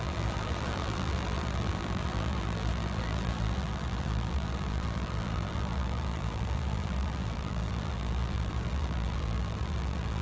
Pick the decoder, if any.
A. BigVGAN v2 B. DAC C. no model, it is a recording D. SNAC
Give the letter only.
A